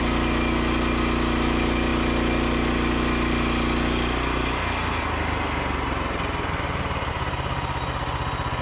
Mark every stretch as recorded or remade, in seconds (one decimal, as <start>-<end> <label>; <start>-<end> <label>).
0.0-8.6 recorded